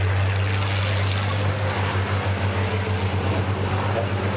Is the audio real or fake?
real